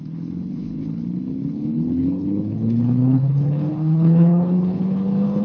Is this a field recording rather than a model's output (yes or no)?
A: no